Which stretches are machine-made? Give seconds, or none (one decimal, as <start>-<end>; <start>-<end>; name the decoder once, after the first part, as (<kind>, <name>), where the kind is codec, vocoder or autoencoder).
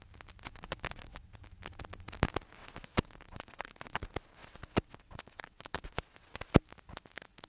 0.4-1.4 (vocoder, WaveNeXt); 2.6-4.0; 4.4-6.4